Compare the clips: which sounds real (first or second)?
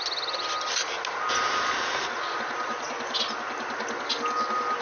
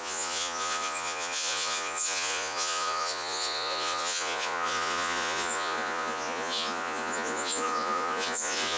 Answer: first